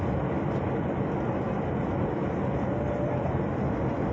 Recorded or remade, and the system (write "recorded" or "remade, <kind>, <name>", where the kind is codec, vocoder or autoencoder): recorded